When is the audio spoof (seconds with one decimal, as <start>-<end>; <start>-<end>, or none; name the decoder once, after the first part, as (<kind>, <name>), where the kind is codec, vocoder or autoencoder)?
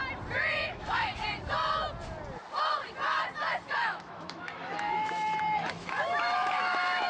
0.5-1.1 (autoencoder, DAC-VAE); 3.7-7.1